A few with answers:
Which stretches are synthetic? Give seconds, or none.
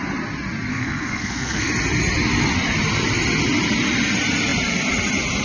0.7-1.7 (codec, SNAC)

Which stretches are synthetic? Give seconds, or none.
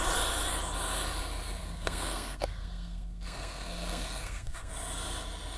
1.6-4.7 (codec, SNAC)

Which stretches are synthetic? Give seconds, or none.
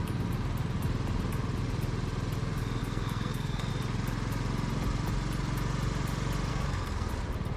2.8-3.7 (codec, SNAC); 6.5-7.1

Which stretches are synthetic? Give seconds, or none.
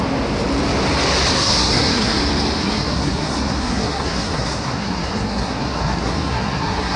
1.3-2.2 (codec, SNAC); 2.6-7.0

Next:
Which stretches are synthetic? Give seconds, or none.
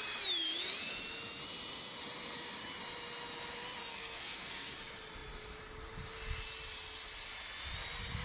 3.9-4.8 (codec, SNAC)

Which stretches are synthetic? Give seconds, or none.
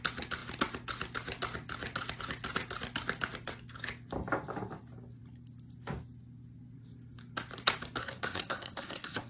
8.0-9.3 (codec, SNAC)